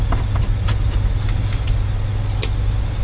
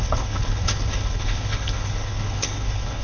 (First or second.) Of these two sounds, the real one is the first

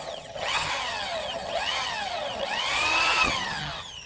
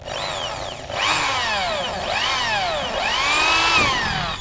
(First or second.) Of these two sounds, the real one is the second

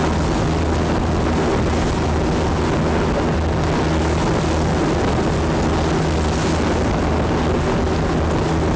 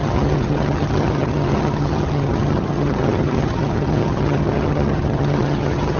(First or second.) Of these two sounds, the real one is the first